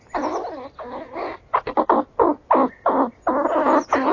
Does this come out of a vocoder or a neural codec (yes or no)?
no